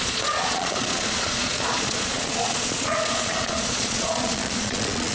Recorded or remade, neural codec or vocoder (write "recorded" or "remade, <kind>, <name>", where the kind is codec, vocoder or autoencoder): remade, vocoder, Vocos